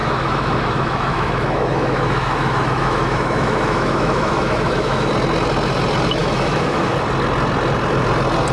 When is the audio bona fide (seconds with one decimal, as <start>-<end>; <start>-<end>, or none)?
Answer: 5.1-6.2; 6.9-8.5

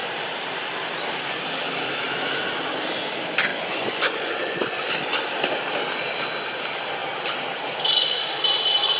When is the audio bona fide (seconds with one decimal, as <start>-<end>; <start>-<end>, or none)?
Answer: 0.0-3.5; 4.9-9.0

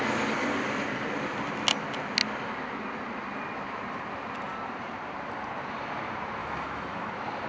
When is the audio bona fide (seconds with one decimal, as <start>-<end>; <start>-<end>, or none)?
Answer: 0.0-6.4; 7.1-7.5

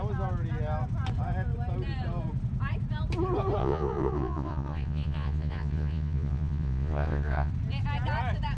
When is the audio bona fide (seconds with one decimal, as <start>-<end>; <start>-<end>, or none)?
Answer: 0.0-3.6; 7.5-8.6

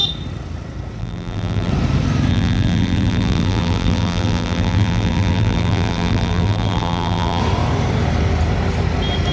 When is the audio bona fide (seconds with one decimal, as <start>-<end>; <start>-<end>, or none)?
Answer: 0.0-1.0; 1.7-2.3; 7.4-9.3

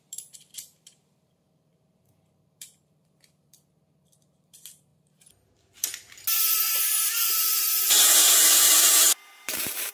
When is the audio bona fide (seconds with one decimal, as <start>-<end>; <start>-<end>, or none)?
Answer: 4.9-7.0